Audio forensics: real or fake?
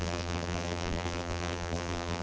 fake